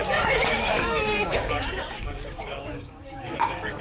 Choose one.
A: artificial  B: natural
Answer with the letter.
A